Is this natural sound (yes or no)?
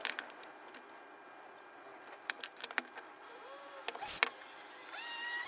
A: yes